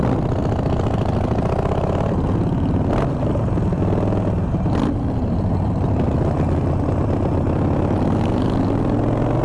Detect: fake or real real